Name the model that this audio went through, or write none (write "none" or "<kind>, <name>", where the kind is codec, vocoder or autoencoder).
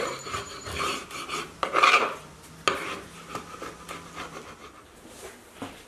none